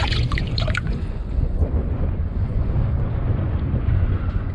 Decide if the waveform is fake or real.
fake